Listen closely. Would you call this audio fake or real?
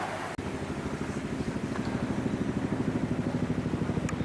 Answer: real